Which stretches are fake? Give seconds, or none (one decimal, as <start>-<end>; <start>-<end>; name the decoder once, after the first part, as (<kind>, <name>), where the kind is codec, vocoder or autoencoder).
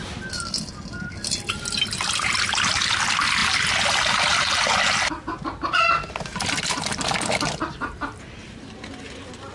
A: none